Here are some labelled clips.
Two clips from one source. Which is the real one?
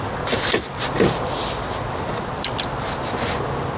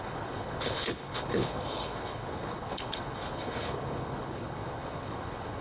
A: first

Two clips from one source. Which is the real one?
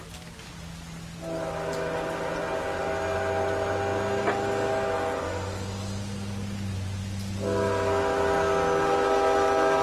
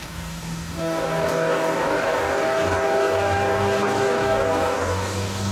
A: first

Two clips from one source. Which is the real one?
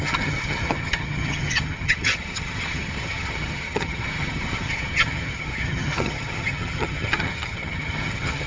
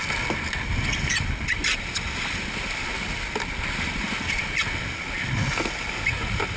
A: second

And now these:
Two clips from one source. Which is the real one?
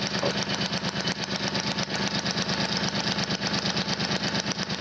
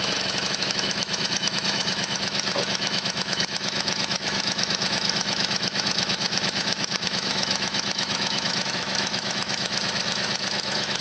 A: first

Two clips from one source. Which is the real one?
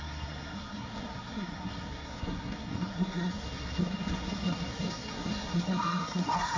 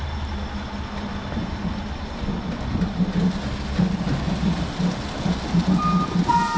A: second